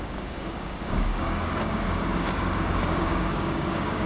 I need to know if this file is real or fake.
fake